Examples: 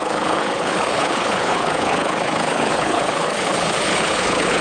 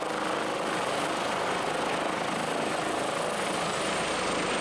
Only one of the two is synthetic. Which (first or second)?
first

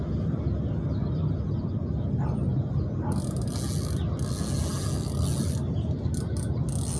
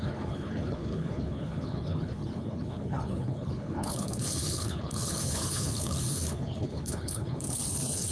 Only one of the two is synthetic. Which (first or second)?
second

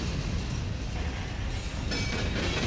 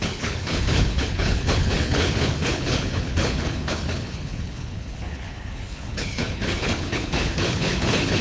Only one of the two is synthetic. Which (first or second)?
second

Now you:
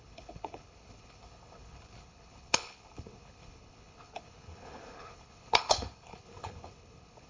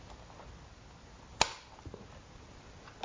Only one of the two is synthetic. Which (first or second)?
first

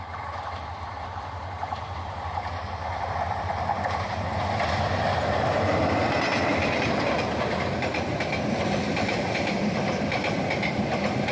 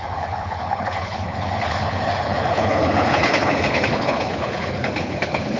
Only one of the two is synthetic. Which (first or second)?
second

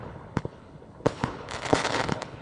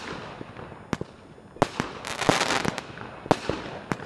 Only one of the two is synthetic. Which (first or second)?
first